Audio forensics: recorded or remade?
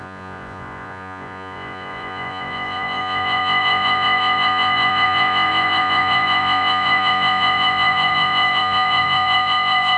remade